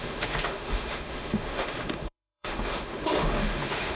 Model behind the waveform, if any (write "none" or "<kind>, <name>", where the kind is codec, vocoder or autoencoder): autoencoder, DAC-VAE